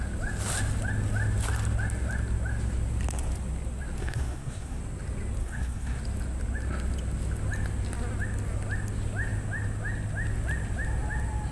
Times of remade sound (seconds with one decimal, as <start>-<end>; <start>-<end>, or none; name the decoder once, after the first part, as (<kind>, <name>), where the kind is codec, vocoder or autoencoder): 4.0-4.8 (codec, SNAC); 5.4-6.0